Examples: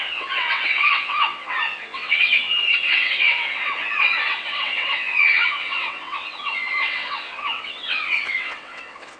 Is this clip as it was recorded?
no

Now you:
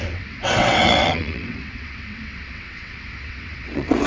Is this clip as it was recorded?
no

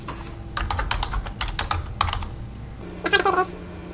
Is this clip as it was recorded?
yes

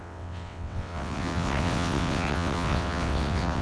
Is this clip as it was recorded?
no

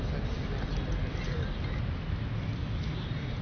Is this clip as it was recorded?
yes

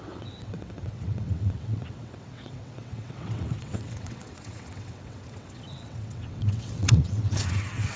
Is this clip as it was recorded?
no